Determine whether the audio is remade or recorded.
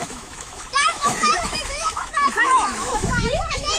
remade